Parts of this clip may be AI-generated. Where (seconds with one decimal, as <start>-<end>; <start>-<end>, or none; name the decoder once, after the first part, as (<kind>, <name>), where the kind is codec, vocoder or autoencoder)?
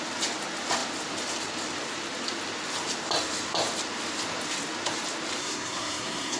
5.4-6.4 (codec, SNAC)